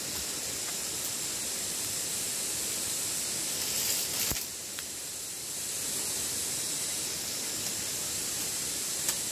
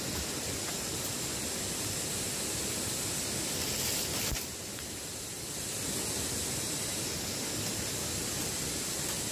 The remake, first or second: first